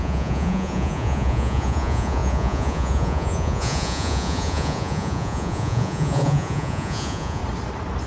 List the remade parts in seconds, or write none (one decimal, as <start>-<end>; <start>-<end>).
0.0-7.4